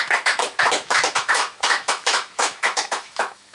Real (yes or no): no